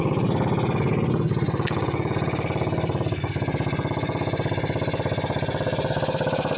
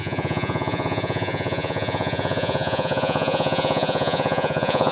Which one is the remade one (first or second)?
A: second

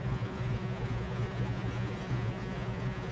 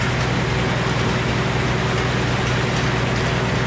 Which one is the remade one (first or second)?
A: first